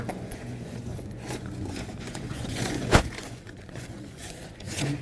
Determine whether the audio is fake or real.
fake